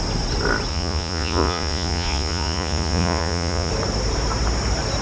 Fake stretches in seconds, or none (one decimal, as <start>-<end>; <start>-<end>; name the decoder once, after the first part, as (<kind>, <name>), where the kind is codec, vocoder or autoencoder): 0.7-3.7 (vocoder, Vocos)